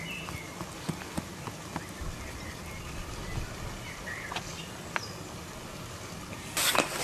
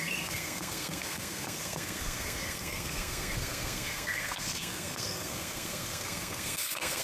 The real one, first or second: first